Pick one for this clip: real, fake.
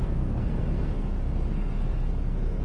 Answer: fake